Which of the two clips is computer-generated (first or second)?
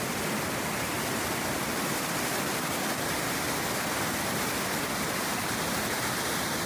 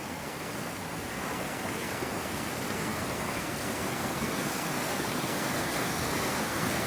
second